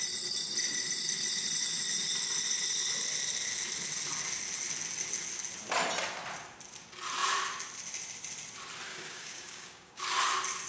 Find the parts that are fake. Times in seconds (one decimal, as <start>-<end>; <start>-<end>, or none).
8.9-10.0